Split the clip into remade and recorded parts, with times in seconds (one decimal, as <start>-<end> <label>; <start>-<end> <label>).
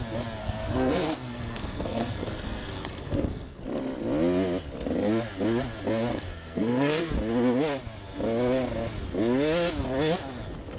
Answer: 0.0-0.4 recorded; 0.4-3.6 remade; 3.6-6.1 recorded; 6.1-7.1 remade; 7.1-10.8 recorded